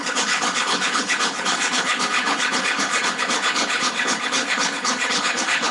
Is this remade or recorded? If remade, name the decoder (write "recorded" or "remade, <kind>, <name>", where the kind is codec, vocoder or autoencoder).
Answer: remade, codec, HILCodec